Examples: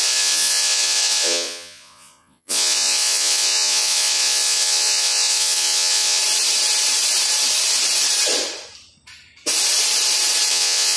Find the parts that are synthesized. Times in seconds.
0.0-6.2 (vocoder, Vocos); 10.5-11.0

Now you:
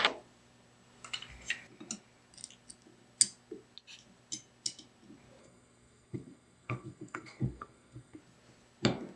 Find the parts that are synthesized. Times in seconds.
5.4-8.2 (codec, SNAC)

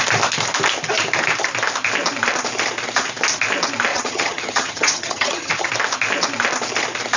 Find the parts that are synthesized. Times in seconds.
3.9-5.7 (vocoder, HiFi-GAN)

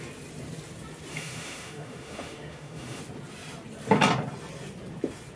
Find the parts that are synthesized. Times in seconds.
1.1-3.0 (autoencoder, DAC-VAE)

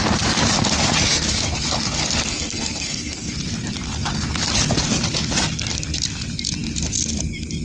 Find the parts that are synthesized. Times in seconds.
2.2-3.3 (codec, SNAC)

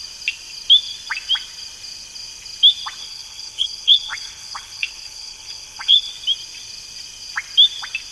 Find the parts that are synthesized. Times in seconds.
3.0-6.1 (codec, HILCodec)

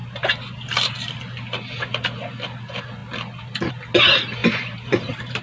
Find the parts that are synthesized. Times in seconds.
0.0-0.5 (vocoder, BigVGAN v2); 4.4-5.4